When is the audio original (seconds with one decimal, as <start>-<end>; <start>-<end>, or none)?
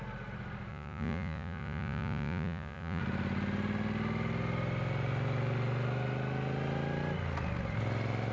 0.0-0.7; 3.0-8.3